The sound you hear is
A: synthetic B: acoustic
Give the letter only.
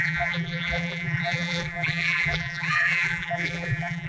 A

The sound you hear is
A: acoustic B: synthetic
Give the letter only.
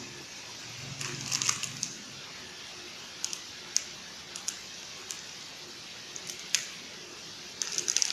A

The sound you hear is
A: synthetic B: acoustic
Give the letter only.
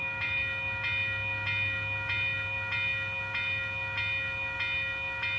B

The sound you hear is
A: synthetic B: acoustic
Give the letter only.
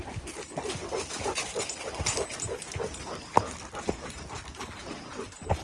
B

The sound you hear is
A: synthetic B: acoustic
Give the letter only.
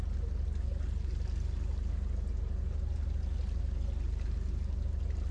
B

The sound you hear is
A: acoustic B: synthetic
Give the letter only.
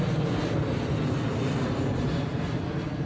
A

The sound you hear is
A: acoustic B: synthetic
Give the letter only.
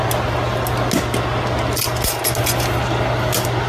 A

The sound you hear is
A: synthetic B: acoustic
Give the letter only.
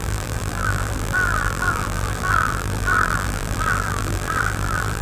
A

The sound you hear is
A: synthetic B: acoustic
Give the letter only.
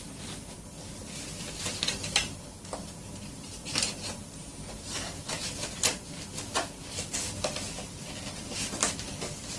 A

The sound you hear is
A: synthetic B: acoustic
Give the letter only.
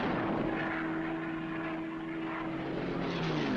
B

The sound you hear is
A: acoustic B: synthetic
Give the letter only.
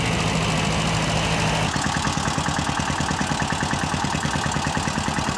A